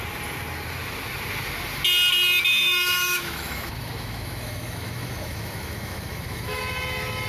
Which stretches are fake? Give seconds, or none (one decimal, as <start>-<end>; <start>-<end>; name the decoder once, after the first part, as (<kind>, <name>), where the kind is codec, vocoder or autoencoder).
2.5-6.6 (autoencoder, DAC-VAE)